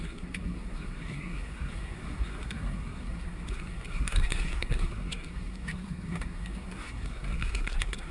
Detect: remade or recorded remade